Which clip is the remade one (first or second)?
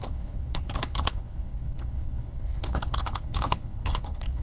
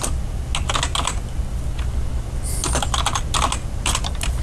first